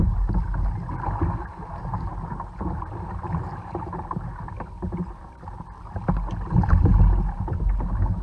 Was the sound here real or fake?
real